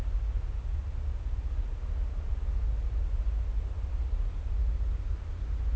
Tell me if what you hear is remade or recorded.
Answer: recorded